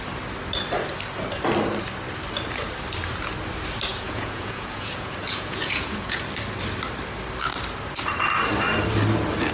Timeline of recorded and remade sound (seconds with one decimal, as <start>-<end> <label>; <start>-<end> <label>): 0.0-3.9 recorded; 3.9-6.2 remade; 6.2-9.5 recorded